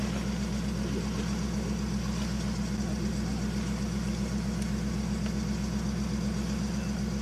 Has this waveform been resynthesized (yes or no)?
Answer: no